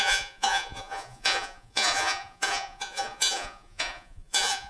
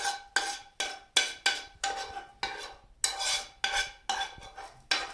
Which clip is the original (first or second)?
second